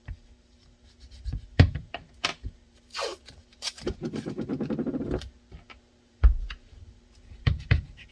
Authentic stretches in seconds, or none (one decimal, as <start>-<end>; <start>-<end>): 4.5-6.1